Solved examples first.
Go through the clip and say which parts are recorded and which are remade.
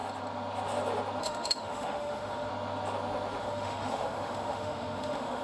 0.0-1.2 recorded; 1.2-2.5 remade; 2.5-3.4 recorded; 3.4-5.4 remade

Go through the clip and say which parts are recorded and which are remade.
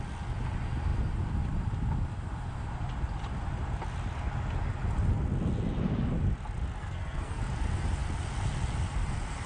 0.0-6.8 recorded; 6.8-7.4 remade; 7.4-9.5 recorded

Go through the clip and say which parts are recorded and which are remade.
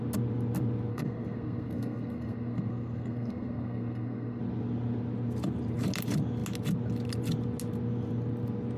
0.0-0.9 recorded; 0.9-4.4 remade; 4.4-8.8 recorded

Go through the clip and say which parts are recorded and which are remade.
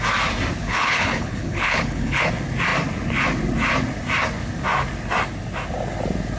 0.0-0.6 recorded; 0.6-2.3 remade; 2.3-6.4 recorded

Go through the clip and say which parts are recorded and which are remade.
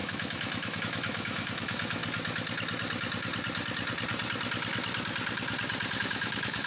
0.0-2.0 remade; 2.0-6.0 recorded; 6.0-6.7 remade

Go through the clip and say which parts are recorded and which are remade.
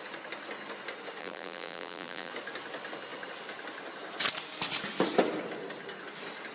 0.0-1.2 recorded; 1.2-2.3 remade; 2.3-6.5 recorded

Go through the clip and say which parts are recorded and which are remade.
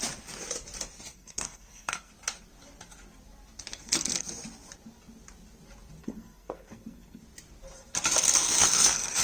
0.0-1.1 recorded; 1.1-2.1 remade; 2.1-3.7 recorded; 3.7-4.3 remade; 4.3-6.0 recorded; 6.0-7.2 remade; 7.2-8.4 recorded; 8.4-9.2 remade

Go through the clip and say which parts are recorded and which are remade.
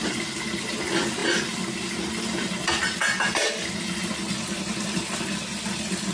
0.0-6.1 recorded